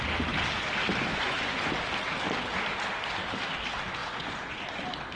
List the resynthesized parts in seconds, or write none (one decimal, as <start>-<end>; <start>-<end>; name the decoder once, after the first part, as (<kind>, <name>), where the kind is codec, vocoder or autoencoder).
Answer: 1.1-1.7 (vocoder, Vocos); 4.0-4.6